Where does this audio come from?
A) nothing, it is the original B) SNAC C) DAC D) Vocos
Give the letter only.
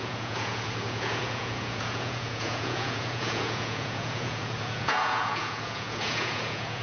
D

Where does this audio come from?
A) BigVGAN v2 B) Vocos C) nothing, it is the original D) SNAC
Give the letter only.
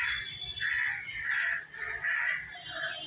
C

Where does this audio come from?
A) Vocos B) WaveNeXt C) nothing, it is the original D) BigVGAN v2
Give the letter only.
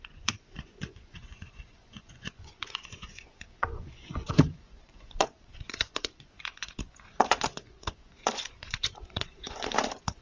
A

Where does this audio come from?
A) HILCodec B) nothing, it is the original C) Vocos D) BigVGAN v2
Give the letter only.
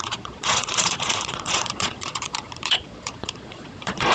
C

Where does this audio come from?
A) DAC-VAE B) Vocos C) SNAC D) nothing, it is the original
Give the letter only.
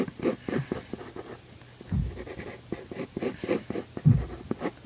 D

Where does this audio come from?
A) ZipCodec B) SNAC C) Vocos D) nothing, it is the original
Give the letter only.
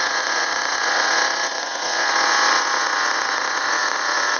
C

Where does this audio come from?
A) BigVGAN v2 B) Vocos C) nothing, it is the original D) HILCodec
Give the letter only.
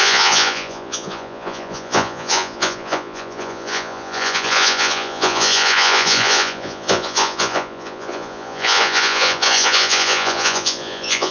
B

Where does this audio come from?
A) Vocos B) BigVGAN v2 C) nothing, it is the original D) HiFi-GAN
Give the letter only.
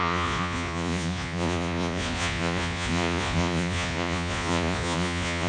A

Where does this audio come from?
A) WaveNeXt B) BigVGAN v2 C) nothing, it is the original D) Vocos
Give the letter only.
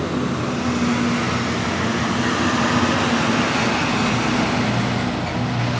C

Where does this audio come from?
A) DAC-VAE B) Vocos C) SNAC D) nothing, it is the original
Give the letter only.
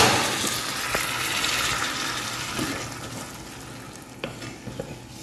D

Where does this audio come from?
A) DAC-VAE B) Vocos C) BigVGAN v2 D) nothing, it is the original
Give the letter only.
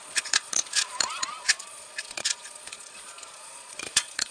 B